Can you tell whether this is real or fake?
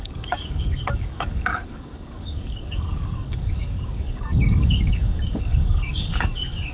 fake